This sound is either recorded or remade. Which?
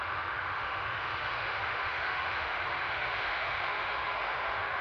remade